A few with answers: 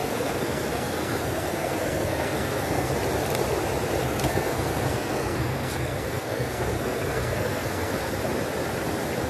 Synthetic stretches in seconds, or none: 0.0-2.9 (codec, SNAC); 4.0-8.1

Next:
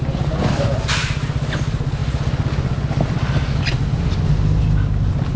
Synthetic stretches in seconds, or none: none

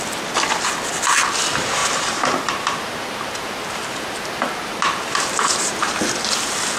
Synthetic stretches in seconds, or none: 1.8-5.9 (vocoder, BigVGAN v2)

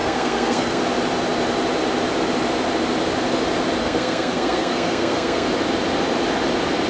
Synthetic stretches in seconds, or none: 0.0-0.8 (codec, SNAC); 3.8-5.5

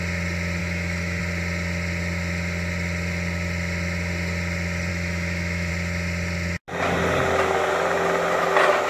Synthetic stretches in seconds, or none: 0.6-1.2 (autoencoder, DAC-VAE); 4.9-5.7